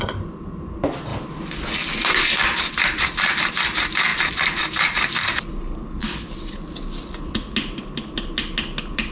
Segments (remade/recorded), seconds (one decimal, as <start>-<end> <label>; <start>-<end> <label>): 0.0-1.1 remade; 1.1-2.4 recorded; 2.4-4.1 remade; 4.1-9.1 recorded